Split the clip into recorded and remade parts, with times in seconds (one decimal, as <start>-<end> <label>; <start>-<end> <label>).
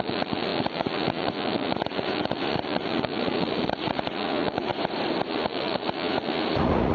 0.0-4.7 remade; 4.7-5.3 recorded; 5.3-6.9 remade